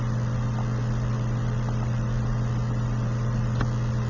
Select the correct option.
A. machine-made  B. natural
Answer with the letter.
B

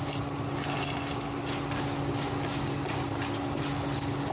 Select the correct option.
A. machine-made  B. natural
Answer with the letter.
B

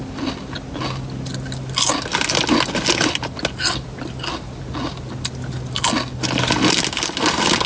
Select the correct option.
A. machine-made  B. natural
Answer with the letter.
B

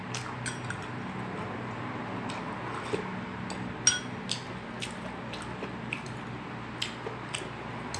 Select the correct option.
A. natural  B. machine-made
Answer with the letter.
A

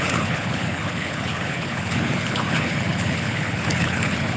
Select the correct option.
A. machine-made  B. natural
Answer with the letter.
A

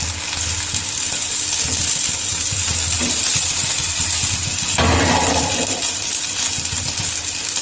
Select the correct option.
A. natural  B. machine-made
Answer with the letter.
A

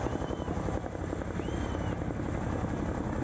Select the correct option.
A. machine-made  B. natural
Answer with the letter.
B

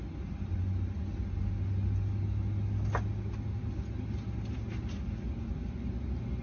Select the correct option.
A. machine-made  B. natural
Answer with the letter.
B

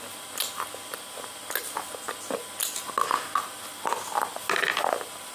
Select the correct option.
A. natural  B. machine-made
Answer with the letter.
A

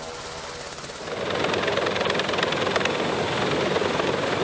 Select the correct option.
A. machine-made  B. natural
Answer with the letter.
B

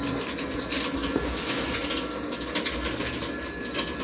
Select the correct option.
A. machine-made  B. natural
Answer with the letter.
B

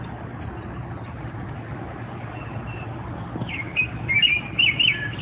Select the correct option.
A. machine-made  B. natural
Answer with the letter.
B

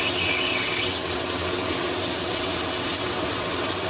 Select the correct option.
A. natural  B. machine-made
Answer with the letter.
B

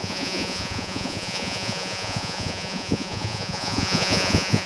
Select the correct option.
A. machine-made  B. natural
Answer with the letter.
A